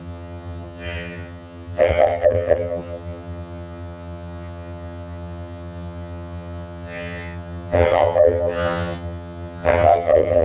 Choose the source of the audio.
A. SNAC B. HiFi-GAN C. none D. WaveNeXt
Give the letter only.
B